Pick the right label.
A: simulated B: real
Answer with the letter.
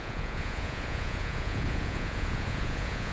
A